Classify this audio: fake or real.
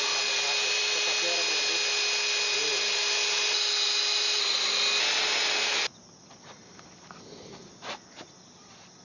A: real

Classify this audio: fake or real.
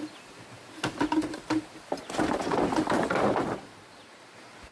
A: real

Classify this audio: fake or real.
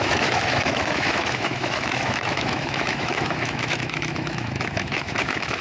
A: fake